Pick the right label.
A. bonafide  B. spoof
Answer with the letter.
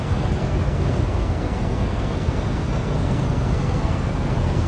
B